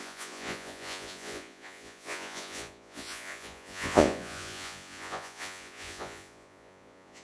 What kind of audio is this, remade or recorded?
remade